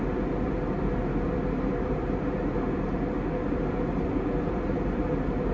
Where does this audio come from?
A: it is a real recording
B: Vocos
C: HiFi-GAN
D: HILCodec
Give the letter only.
A